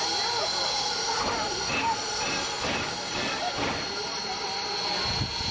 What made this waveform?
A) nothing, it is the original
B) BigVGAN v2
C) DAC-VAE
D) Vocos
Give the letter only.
A